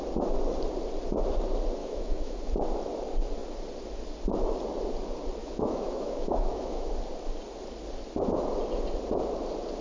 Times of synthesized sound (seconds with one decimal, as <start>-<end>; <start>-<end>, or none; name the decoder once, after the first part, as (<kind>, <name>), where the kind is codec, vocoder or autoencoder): 1.8-2.4 (autoencoder, DAC-VAE); 5.4-6.9